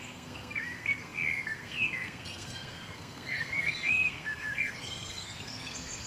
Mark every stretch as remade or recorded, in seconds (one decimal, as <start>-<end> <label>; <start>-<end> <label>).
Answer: 0.0-6.1 remade